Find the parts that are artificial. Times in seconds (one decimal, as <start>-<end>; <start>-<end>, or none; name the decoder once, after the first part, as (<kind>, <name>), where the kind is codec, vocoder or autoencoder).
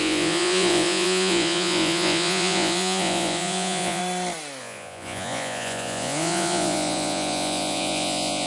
0.0-4.0 (vocoder, Vocos); 4.6-8.5